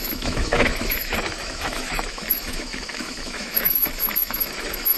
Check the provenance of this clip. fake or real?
fake